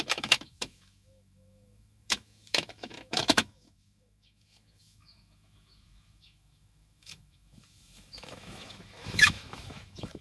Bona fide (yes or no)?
no